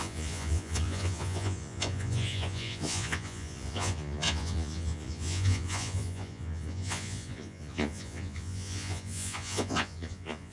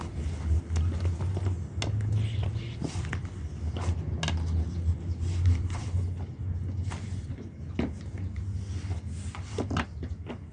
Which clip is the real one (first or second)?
second